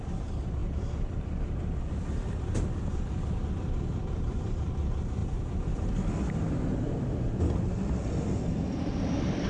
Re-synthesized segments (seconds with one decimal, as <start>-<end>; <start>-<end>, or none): 0.0-9.5

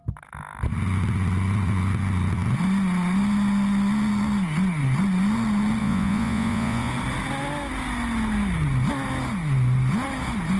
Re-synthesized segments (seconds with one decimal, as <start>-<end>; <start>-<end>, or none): 5.8-6.9